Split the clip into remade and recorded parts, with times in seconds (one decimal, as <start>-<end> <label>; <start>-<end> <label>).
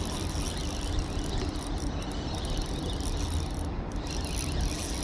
0.0-0.6 remade; 0.6-3.6 recorded; 3.6-5.0 remade